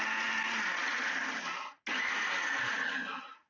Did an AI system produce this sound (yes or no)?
no